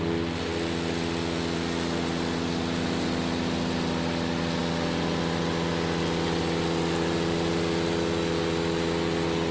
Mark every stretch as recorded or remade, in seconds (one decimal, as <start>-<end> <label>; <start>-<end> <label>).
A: 0.0-9.5 recorded